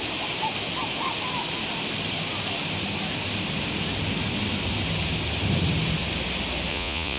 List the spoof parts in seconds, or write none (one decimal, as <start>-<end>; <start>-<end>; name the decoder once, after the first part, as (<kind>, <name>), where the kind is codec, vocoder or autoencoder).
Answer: 6.7-7.2 (vocoder, Vocos)